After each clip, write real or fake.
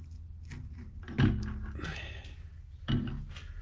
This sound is real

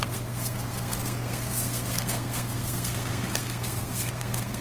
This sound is fake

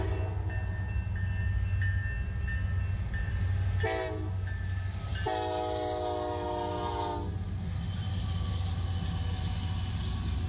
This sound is real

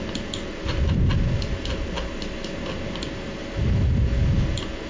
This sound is real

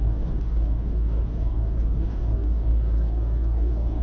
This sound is fake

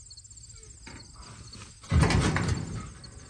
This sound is real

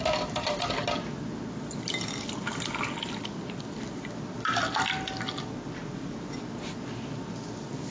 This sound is real